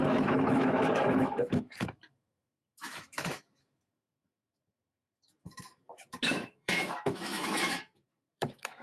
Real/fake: fake